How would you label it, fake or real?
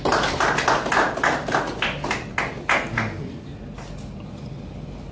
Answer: real